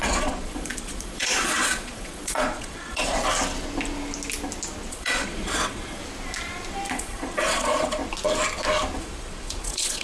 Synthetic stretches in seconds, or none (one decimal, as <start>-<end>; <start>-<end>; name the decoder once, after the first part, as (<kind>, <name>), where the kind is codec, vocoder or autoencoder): 0.0-3.2 (vocoder, Vocos); 4.9-6.0; 6.9-8.0; 9.0-10.0